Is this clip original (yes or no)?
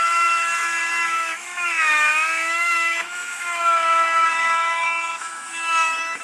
no